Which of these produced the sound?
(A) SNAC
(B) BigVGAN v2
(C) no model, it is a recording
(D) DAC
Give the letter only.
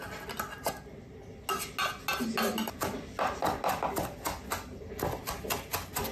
C